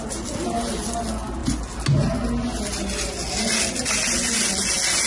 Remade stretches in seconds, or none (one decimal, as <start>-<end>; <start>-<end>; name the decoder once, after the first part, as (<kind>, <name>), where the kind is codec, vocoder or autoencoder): none